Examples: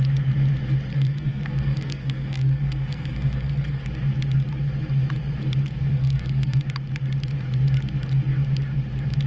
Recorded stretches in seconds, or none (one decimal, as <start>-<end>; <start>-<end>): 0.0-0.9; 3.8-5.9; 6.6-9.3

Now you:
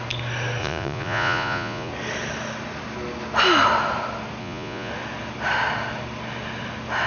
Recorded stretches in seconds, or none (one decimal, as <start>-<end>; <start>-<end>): 0.0-0.6; 1.9-4.4; 4.9-7.1

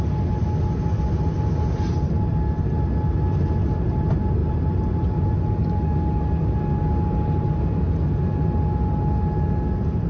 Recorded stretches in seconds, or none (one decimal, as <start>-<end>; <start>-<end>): 0.0-4.4; 5.2-10.1

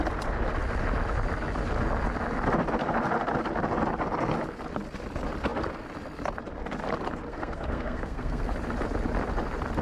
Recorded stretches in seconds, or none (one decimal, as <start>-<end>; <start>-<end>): 0.0-7.3; 8.5-9.8